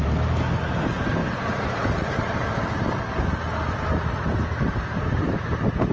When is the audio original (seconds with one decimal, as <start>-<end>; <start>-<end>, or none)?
0.0-1.2; 4.7-5.9

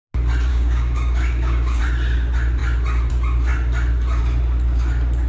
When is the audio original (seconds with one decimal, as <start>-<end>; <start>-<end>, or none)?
0.0-0.5; 1.8-5.3

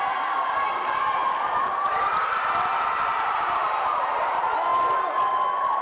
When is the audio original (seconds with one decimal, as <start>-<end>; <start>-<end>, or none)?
0.0-2.7; 4.2-5.8

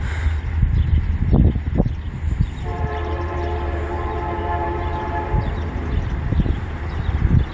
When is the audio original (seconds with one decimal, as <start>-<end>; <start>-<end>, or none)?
0.0-2.7; 6.2-7.5

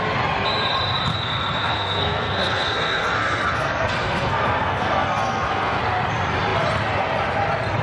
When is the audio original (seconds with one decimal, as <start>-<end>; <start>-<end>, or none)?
0.0-1.1; 5.8-7.8

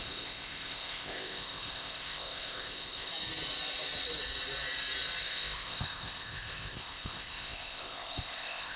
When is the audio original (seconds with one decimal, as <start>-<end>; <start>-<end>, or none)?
3.1-5.2